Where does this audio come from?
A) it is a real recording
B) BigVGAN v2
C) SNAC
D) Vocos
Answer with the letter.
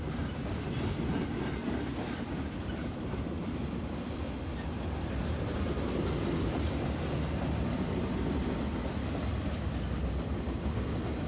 A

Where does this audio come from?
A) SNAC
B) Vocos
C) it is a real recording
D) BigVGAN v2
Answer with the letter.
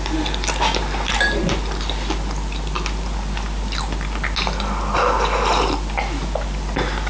C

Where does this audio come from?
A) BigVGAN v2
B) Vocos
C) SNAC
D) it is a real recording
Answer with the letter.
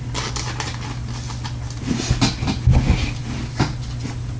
D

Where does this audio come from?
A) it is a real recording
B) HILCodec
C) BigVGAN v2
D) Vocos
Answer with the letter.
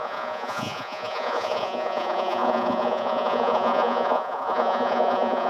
D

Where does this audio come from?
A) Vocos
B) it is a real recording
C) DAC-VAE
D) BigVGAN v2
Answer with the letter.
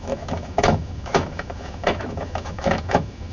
C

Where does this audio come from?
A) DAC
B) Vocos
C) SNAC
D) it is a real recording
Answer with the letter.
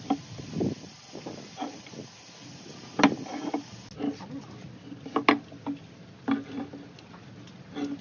D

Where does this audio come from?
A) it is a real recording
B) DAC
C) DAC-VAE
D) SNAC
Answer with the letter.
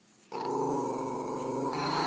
B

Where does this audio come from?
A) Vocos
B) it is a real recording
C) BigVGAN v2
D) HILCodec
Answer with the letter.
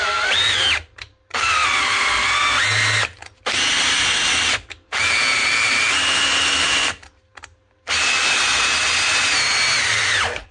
B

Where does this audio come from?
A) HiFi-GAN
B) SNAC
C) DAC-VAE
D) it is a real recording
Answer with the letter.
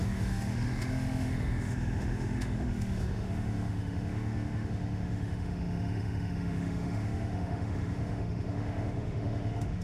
C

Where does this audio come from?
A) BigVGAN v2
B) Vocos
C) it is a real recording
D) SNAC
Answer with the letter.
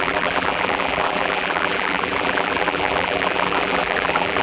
A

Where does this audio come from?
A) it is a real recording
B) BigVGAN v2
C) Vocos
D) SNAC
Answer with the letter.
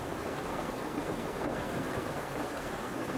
D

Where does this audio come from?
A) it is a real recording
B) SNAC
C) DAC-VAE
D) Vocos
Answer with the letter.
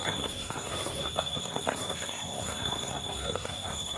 B